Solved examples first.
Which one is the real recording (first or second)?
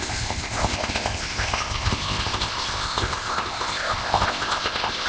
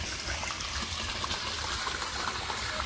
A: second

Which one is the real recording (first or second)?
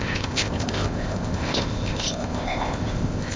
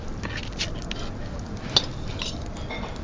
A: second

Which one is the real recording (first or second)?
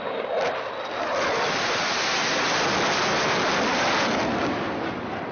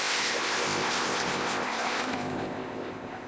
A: first